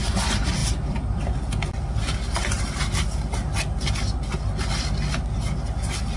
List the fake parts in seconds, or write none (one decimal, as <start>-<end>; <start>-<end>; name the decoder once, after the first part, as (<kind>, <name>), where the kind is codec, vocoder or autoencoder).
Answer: 0.6-2.6 (vocoder, BigVGAN v2)